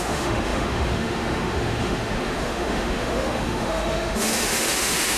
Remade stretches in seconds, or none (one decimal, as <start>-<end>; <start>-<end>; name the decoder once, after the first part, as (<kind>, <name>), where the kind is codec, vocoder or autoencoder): 0.0-5.2 (autoencoder, DAC-VAE)